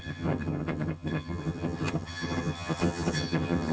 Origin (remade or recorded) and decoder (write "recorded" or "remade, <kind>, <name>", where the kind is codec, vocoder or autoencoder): remade, vocoder, HiFi-GAN